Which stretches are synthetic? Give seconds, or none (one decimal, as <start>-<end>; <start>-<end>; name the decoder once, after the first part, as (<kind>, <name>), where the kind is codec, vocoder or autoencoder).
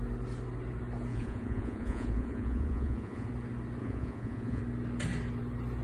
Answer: 1.1-3.3 (vocoder, Vocos); 3.8-4.6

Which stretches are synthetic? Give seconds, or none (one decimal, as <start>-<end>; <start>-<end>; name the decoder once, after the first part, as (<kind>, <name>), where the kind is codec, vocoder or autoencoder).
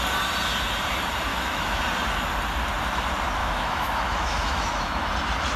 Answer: 1.3-1.8 (autoencoder, DAC-VAE); 3.4-5.1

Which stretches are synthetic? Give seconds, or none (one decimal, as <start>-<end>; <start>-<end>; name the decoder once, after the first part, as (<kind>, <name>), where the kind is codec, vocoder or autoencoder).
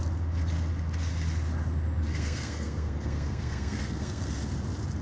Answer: 2.1-4.3 (codec, SNAC)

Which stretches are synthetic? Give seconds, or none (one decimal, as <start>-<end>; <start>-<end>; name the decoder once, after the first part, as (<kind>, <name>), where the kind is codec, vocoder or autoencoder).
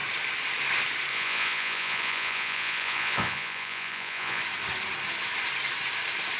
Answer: 1.1-4.4 (vocoder, Vocos)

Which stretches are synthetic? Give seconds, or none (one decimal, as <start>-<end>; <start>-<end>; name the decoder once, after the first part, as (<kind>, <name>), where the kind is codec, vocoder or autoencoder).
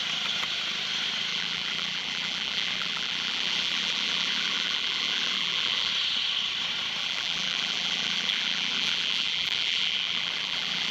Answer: 1.3-5.9 (vocoder, BigVGAN v2); 7.0-10.9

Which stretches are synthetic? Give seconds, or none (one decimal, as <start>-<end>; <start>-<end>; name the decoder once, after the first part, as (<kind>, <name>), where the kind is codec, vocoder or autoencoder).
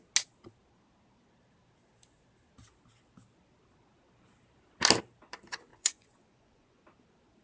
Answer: 5.7-6.8 (vocoder, Vocos)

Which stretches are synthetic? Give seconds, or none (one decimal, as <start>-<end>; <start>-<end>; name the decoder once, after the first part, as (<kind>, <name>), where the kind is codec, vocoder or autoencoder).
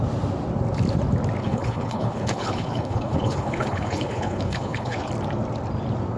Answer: 1.4-5.1 (codec, HILCodec)